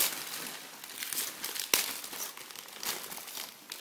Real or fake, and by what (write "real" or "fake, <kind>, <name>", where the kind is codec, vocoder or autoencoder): real